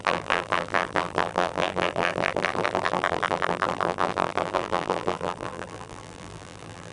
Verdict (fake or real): fake